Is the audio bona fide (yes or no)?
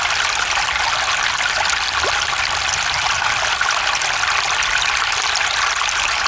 yes